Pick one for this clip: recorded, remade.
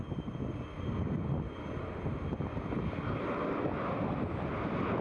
recorded